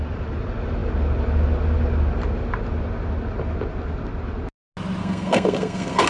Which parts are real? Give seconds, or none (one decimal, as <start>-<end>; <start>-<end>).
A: 0.0-5.0